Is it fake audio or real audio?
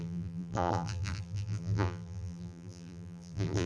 fake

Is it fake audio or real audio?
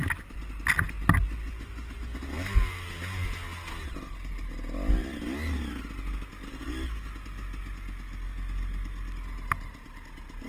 real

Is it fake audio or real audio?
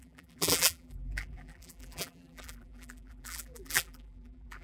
fake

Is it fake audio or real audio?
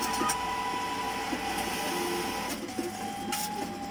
real